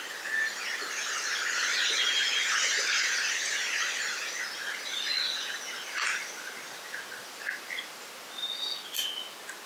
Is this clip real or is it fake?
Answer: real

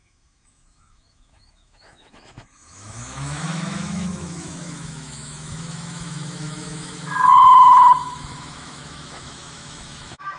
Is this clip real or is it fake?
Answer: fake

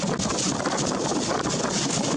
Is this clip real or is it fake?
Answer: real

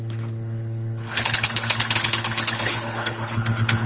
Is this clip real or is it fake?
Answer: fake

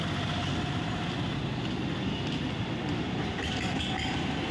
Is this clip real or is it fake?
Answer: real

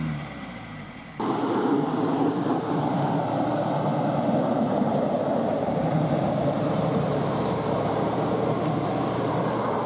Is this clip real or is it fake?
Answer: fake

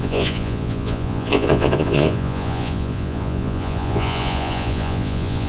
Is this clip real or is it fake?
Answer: fake